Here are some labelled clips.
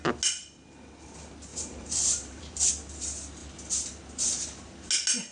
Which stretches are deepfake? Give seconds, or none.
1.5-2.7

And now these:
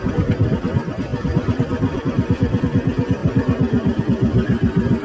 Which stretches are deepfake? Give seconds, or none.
1.1-2.6; 3.2-4.0

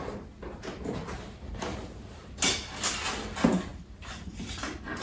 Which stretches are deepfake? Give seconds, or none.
none

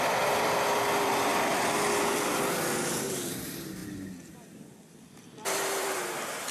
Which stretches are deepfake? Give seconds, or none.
0.0-1.3; 1.8-3.8; 5.2-6.5

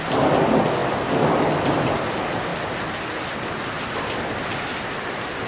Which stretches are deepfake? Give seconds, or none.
none

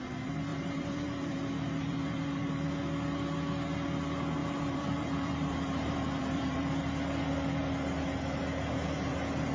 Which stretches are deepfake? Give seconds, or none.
0.5-2.7; 4.4-6.7